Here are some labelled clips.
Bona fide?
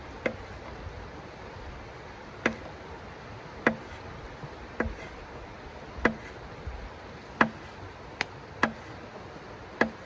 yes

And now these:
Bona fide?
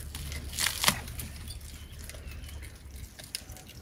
yes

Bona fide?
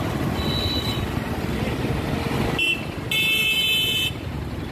yes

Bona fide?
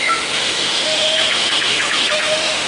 no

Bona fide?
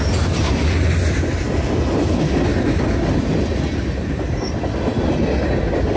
yes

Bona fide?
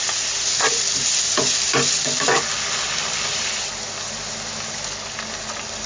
yes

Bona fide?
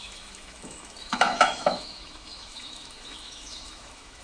no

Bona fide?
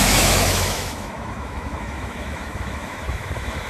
no